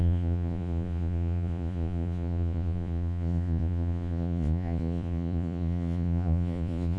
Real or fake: fake